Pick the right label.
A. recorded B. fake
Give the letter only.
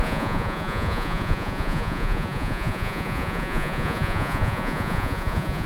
B